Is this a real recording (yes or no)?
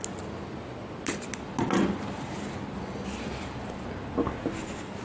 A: yes